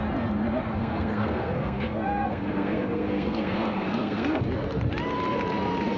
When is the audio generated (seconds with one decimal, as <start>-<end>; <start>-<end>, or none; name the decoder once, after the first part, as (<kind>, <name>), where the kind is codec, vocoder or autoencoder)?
0.8-4.4 (codec, SNAC)